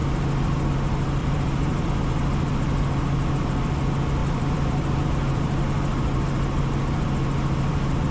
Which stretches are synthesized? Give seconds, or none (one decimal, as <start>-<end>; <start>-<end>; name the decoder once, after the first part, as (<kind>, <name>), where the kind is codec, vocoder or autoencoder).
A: 1.2-1.9 (vocoder, BigVGAN v2); 4.2-5.6